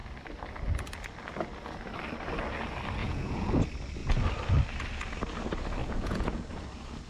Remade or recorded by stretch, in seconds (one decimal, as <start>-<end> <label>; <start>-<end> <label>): 0.0-3.0 recorded; 3.0-3.5 remade; 3.5-5.8 recorded; 5.8-6.4 remade; 6.4-7.1 recorded